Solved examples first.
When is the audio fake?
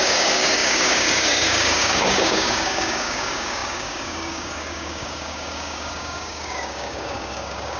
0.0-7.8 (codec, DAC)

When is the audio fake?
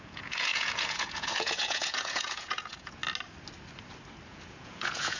0.0-3.0 (vocoder, Vocos); 4.3-5.2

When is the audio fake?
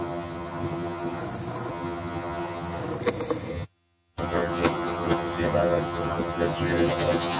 0.0-1.2 (vocoder, HiFi-GAN); 1.7-2.8; 3.5-7.4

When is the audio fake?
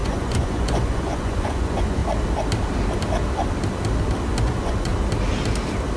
0.0-2.0 (vocoder, Vocos); 4.4-4.9